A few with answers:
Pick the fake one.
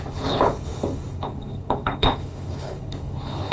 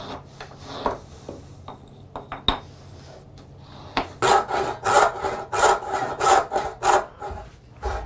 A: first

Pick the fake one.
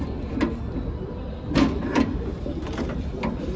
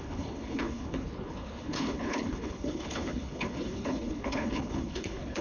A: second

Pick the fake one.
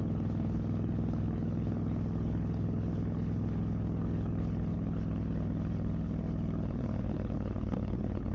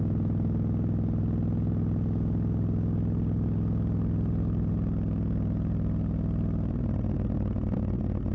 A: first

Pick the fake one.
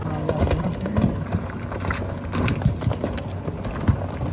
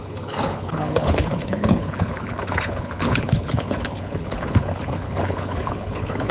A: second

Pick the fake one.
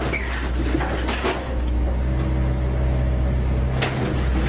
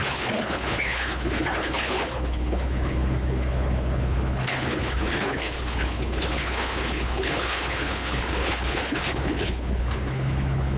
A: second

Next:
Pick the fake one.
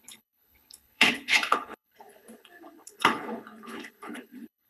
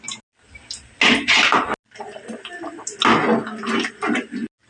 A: first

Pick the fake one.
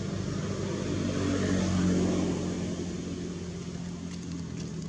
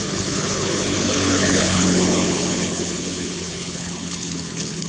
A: second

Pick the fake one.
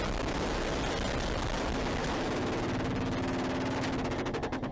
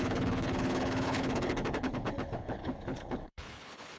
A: second